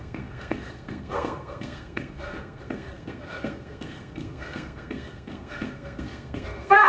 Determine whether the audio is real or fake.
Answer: fake